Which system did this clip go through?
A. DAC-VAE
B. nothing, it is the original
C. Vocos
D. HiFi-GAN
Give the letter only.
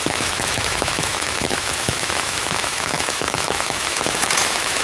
A